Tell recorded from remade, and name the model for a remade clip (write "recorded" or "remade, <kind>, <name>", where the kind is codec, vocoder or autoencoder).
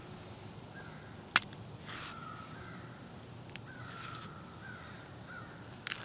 recorded